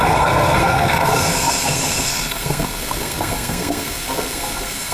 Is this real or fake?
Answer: fake